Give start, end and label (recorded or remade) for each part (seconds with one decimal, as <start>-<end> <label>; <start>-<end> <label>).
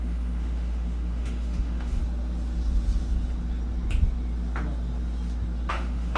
0.0-2.0 remade; 2.0-5.7 recorded; 5.7-6.2 remade